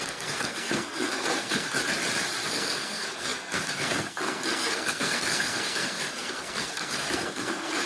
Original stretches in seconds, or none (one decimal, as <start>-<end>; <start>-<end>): 1.8-2.5